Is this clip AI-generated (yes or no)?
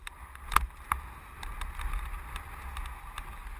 no